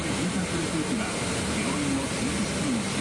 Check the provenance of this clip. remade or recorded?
recorded